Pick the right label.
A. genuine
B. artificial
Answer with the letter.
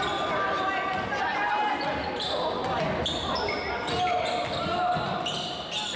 A